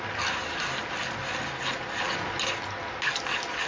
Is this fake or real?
real